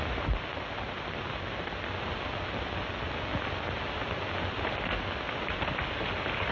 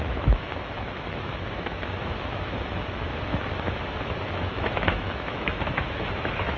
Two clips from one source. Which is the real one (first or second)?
first